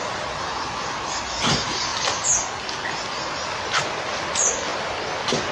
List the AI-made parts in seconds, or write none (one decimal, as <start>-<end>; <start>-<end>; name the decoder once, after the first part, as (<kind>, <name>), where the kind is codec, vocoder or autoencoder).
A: none